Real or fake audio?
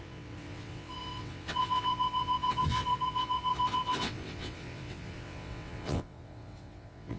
fake